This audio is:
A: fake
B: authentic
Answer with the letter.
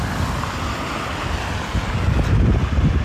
B